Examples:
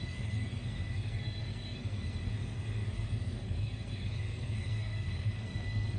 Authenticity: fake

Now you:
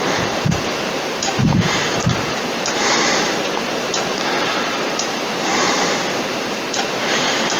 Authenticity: fake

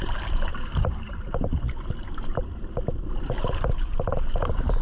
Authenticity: fake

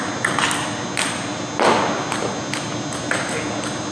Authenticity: real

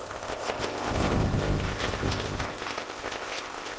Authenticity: fake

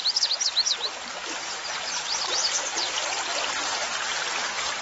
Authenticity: real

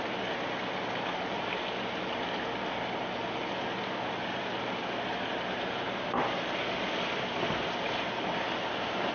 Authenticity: real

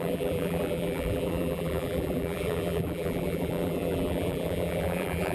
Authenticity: fake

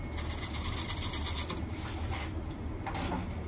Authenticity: real